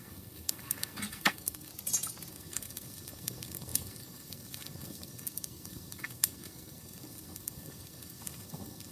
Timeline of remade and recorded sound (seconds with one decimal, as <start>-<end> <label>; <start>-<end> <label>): 0.0-1.7 remade; 1.7-2.3 recorded; 2.3-8.9 remade